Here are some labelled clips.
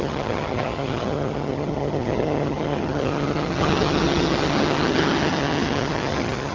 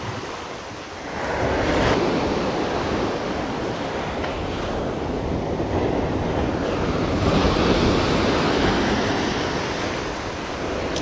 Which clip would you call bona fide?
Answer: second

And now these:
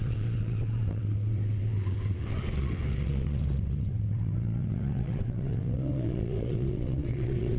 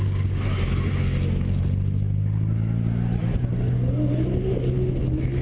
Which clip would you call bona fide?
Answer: second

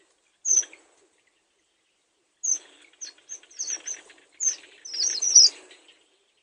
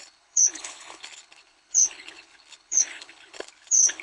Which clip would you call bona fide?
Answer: first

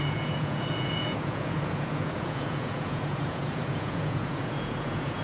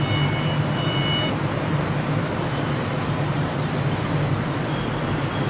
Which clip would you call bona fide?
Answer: second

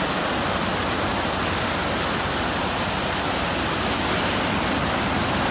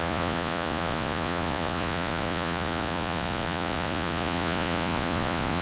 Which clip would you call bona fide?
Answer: first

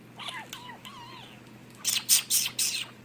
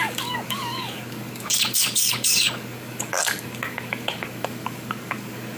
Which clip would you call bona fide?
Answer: first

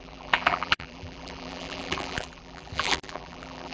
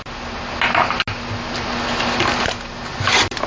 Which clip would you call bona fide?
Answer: second